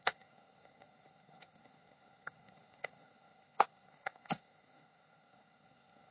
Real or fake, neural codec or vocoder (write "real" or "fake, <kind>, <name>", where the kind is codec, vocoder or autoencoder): fake, codec, SNAC